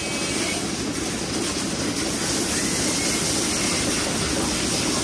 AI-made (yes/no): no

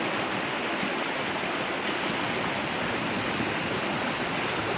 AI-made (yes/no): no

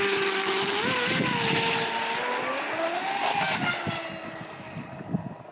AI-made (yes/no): no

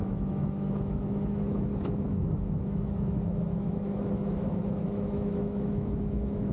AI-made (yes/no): yes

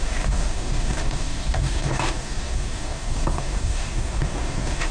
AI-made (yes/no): yes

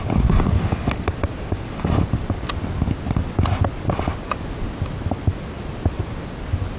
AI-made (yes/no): no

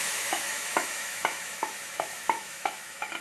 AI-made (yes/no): yes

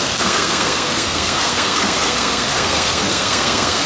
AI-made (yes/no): yes